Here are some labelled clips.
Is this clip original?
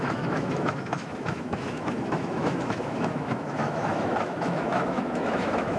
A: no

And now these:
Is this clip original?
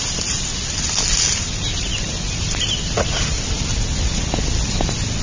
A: yes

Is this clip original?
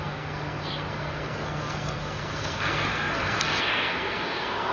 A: no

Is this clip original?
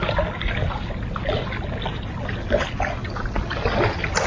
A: yes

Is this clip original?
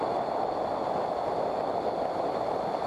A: yes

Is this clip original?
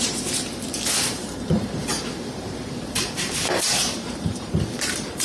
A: no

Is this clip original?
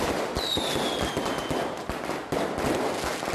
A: yes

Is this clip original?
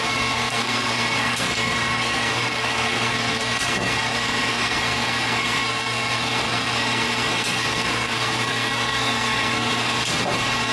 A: no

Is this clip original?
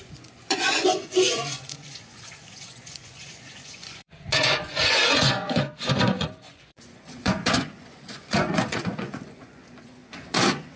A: no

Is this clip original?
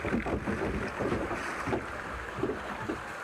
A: yes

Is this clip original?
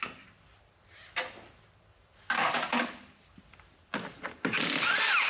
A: yes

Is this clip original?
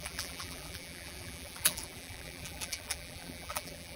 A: no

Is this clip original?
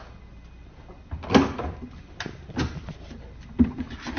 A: yes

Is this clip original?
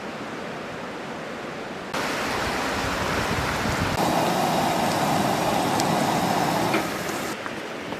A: yes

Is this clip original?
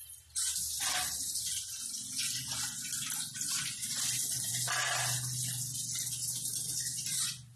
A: yes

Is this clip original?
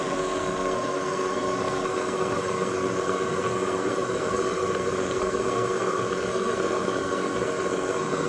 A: no